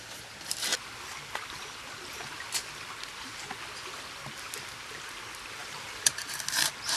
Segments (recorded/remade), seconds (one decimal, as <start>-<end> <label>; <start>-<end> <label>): 0.0-5.6 recorded; 5.6-6.1 remade; 6.1-7.0 recorded